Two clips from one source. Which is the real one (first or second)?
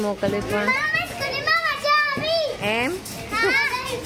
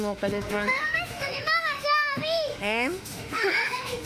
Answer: first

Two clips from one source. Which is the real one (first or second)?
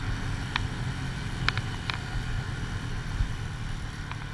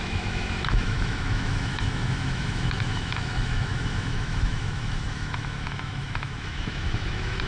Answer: first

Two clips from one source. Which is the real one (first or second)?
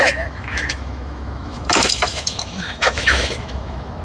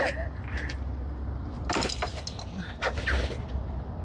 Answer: second